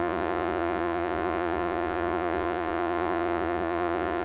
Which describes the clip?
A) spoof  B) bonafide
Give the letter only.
A